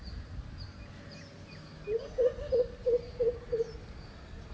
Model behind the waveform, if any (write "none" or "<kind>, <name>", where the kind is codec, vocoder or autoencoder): none